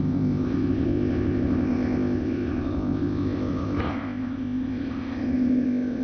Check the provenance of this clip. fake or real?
fake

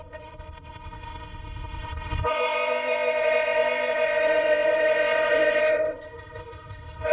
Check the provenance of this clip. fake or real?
fake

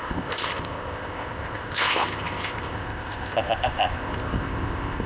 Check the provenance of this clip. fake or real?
fake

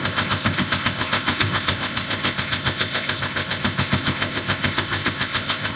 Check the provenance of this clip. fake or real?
fake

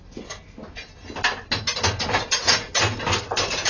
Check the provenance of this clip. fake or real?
real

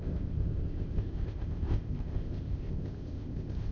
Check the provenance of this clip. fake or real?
fake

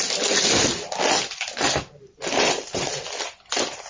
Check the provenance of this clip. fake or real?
real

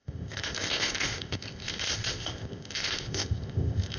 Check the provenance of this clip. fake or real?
fake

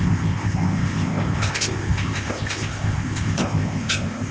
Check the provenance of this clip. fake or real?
fake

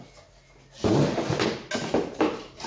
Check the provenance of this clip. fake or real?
real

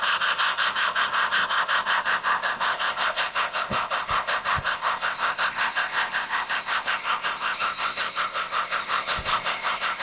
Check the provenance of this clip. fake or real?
fake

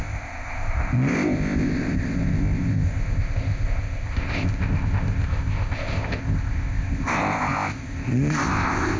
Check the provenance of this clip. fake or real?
fake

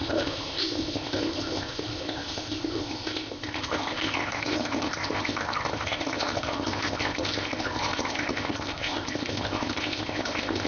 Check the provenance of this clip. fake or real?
fake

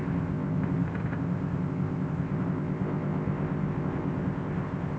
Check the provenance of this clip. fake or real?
fake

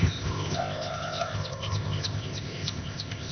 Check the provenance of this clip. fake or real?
fake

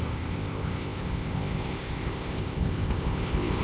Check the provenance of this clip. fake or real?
fake